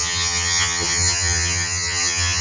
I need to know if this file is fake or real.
fake